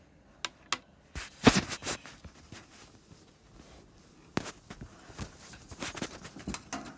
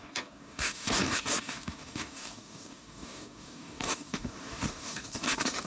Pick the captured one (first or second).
first